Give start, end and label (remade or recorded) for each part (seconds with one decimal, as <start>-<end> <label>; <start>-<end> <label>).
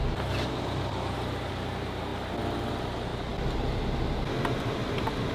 0.0-2.1 remade; 2.1-2.7 recorded; 2.7-3.1 remade; 3.1-4.3 recorded; 4.3-5.3 remade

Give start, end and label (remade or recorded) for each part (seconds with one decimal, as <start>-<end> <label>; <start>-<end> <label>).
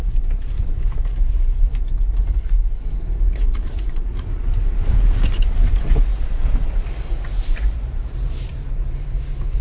0.0-1.7 remade; 1.7-3.3 recorded; 3.3-9.6 remade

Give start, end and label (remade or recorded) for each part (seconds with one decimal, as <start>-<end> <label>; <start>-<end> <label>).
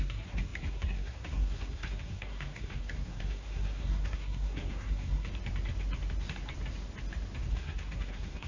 0.0-5.3 remade; 5.3-7.5 recorded; 7.5-8.5 remade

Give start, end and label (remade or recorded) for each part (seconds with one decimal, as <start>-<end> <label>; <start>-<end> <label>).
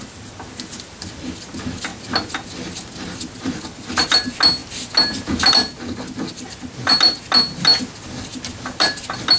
0.0-9.4 recorded